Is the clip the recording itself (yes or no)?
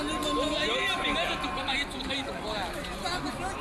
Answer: yes